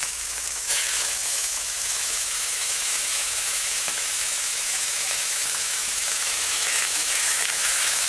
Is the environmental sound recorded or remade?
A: remade